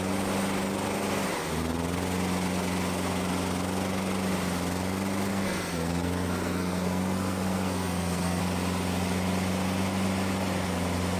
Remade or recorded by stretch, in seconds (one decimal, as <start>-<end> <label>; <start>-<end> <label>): 0.0-5.3 recorded; 5.3-8.4 remade; 8.4-11.2 recorded